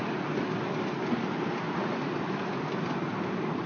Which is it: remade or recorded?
recorded